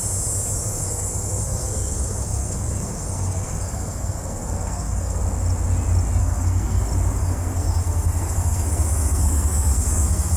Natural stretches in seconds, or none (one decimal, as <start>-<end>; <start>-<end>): 0.0-0.7; 5.2-6.2; 6.8-7.2